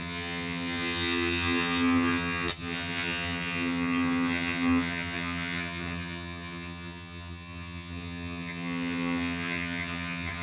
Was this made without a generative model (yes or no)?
no